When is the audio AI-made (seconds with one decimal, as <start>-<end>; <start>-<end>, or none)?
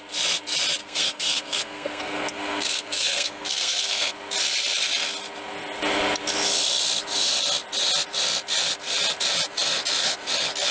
0.8-4.1